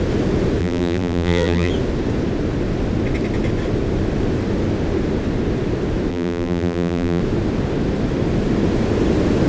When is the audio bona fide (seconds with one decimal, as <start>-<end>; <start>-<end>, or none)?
0.0-0.6; 1.7-6.1; 7.2-9.5